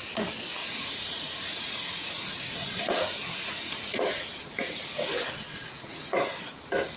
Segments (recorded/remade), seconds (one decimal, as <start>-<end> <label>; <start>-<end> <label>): 0.0-0.6 recorded; 0.6-4.8 remade; 4.8-5.5 recorded; 5.5-6.5 remade; 6.5-7.0 recorded